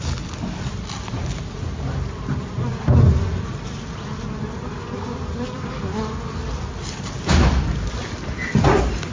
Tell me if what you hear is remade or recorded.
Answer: recorded